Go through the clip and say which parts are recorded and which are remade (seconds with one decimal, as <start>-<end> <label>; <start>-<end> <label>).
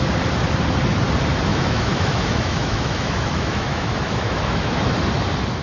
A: 0.0-1.5 recorded; 1.5-4.9 remade; 4.9-5.6 recorded